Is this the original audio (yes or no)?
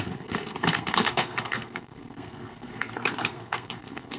no